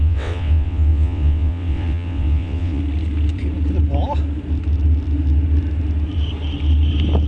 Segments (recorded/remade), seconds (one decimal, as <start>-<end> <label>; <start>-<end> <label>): 0.0-2.8 remade; 2.8-7.3 recorded